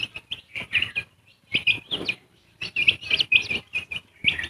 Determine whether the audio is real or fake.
fake